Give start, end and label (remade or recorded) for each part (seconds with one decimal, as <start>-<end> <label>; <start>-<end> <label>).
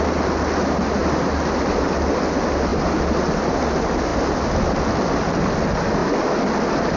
0.0-7.0 recorded